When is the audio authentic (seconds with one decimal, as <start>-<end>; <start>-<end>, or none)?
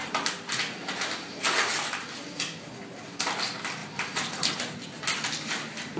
0.0-6.0